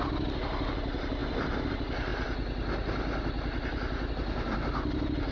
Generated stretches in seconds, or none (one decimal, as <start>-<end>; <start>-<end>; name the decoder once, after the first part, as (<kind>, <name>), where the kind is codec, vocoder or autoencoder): none